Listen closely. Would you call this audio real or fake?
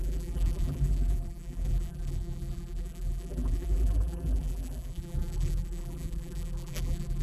fake